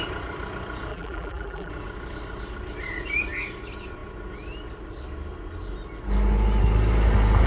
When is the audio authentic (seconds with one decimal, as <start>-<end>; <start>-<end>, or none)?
0.0-0.9; 1.7-7.5